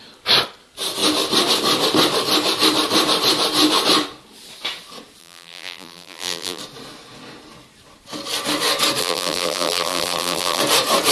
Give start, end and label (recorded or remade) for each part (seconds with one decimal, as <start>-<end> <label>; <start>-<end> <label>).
0.0-5.2 recorded; 5.2-6.6 remade; 6.6-9.0 recorded; 9.0-10.6 remade; 10.6-11.1 recorded